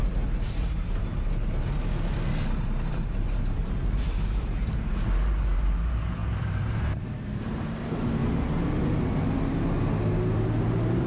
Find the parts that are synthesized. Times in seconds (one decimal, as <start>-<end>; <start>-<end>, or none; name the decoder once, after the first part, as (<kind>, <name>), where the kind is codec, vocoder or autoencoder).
0.0-1.1 (vocoder, BigVGAN v2); 2.9-8.2; 10.6-11.1